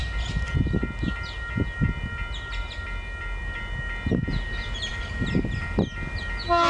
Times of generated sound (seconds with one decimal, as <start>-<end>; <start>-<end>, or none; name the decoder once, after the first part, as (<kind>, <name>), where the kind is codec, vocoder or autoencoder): none